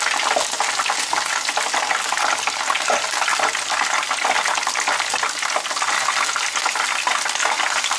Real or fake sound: real